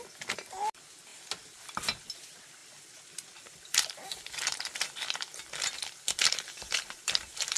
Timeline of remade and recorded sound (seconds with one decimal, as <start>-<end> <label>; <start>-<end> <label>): 0.0-2.6 recorded; 2.6-7.6 remade